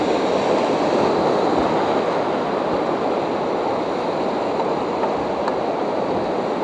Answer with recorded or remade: recorded